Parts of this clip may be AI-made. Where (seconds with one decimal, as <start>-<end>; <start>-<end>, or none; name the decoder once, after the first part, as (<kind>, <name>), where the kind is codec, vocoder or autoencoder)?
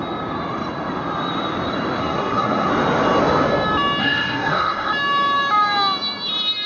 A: 2.0-2.7 (codec, SNAC); 4.0-4.9